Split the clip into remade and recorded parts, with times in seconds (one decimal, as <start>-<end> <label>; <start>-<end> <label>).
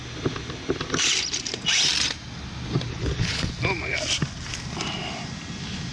0.0-2.9 recorded; 2.9-3.5 remade; 3.5-5.9 recorded